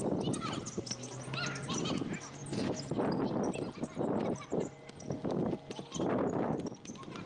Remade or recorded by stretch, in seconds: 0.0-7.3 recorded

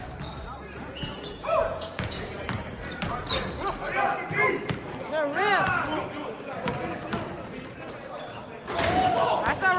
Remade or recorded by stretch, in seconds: 0.0-0.9 recorded; 0.9-2.4 remade; 2.4-9.8 recorded

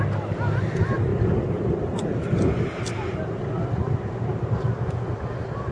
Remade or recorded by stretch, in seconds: 0.0-5.7 recorded

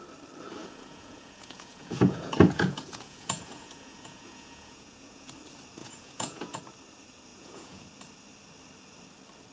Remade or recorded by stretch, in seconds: 0.0-0.6 recorded; 0.6-5.3 remade; 5.3-5.8 recorded; 5.8-6.6 remade; 6.6-7.3 recorded; 7.3-7.9 remade; 7.9-9.5 recorded

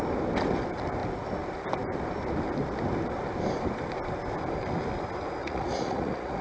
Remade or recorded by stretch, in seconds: 0.0-5.4 recorded; 5.4-6.4 remade

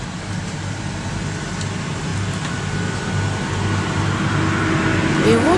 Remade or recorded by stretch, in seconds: 0.0-5.6 recorded